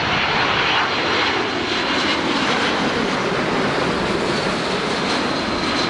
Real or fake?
real